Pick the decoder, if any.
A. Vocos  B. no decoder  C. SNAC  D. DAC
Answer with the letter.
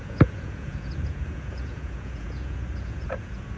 A